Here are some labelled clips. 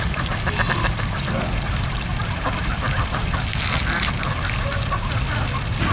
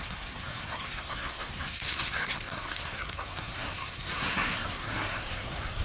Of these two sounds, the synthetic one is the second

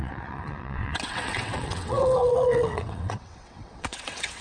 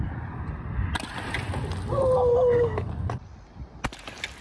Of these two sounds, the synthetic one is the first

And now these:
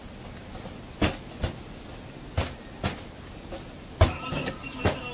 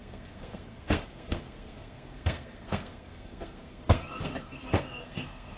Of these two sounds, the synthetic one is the second